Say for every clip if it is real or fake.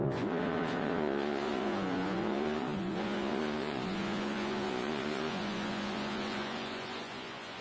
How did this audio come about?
fake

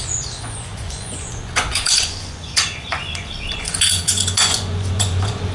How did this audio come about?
fake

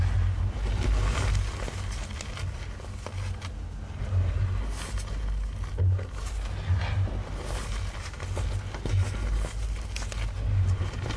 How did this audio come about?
real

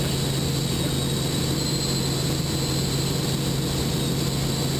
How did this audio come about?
real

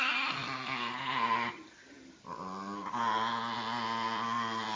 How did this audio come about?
real